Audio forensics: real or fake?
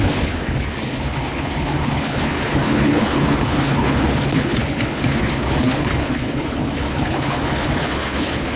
fake